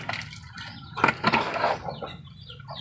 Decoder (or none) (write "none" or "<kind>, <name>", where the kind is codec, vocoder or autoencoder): none